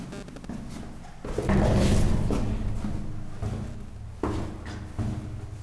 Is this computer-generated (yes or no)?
no